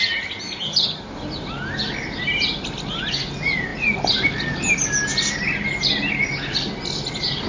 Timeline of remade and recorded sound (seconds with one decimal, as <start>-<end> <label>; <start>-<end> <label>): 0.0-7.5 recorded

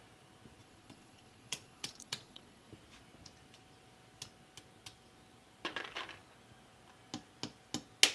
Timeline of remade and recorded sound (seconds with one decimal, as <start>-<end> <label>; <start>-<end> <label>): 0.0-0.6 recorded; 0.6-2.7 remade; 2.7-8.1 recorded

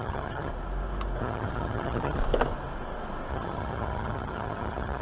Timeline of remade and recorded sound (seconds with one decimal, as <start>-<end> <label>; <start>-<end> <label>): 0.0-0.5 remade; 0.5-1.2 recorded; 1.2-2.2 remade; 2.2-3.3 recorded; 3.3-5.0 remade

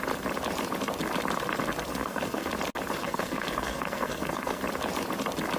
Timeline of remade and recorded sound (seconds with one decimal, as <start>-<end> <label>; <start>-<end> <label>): 0.0-1.9 recorded; 1.9-2.5 remade; 2.5-3.0 recorded; 3.0-4.6 remade; 4.6-5.6 recorded

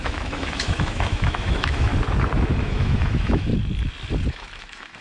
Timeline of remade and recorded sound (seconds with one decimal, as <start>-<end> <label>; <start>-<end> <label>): 0.0-1.9 remade; 1.9-2.6 recorded; 2.6-3.5 remade; 3.5-4.3 recorded; 4.3-5.0 remade

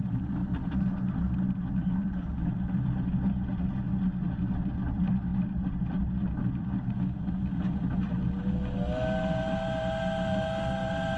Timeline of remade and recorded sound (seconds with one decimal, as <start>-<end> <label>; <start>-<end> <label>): 0.0-11.2 recorded